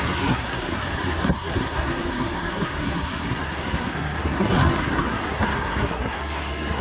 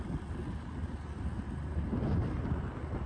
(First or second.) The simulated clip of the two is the first